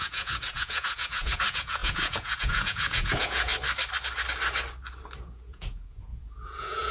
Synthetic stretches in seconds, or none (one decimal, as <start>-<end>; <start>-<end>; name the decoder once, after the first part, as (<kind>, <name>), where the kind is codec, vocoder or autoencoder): 0.0-3.5 (vocoder, Vocos); 5.2-6.9